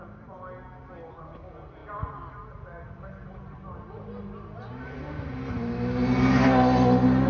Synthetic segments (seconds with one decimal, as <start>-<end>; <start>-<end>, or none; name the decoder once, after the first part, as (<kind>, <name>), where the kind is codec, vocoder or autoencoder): none